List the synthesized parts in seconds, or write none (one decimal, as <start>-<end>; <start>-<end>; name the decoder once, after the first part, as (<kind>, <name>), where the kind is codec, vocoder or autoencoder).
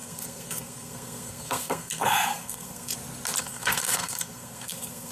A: 0.0-2.9 (codec, SNAC); 3.4-5.1